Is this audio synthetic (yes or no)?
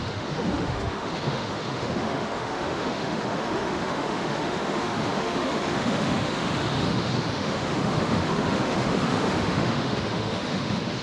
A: yes